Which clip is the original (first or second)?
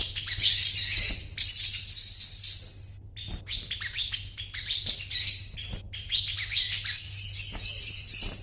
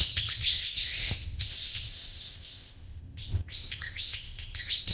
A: first